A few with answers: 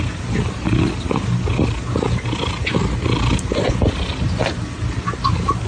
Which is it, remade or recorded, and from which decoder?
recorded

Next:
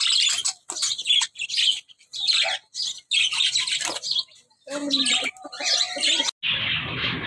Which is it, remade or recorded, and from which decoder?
recorded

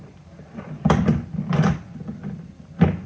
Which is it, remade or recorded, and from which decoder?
recorded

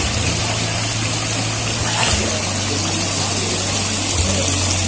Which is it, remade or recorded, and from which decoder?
recorded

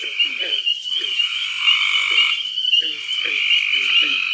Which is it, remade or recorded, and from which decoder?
recorded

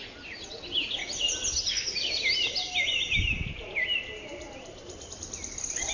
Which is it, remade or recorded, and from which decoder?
recorded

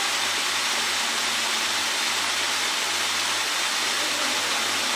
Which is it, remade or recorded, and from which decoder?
recorded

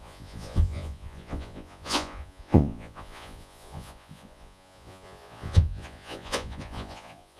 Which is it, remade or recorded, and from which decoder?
remade, vocoder, Vocos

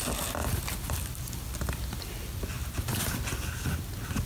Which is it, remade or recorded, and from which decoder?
recorded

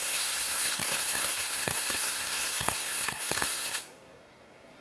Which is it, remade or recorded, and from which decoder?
remade, codec, SNAC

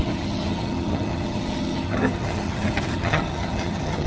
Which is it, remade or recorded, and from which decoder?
remade, vocoder, HiFi-GAN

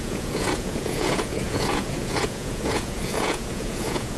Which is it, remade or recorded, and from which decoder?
remade, vocoder, Vocos